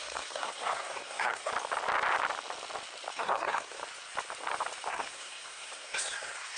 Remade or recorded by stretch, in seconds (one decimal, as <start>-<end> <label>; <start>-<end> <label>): 0.0-1.5 remade; 1.5-3.1 recorded; 3.1-3.8 remade; 3.8-4.9 recorded; 4.9-6.6 remade